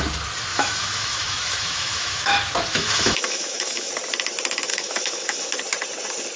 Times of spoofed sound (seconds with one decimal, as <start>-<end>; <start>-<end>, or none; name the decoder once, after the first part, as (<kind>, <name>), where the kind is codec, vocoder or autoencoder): 0.5-3.9 (autoencoder, DAC-VAE); 4.7-5.5